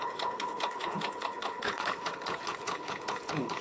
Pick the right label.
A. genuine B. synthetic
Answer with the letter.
B